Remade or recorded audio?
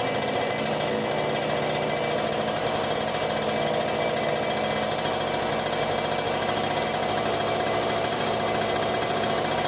recorded